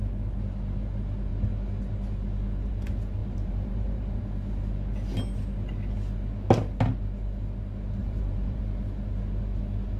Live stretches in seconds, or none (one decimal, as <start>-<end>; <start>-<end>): 0.0-3.2; 4.2-8.0; 8.6-10.0